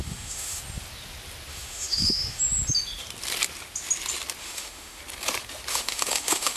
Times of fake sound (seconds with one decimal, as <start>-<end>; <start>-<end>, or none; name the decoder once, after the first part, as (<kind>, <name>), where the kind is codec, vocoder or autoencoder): 0.0-0.6 (autoencoder, DAC-VAE); 1.5-2.4; 4.4-5.0; 5.7-6.6